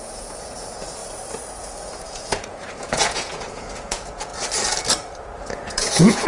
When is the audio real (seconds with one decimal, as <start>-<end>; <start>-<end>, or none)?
1.0-1.6; 4.3-5.4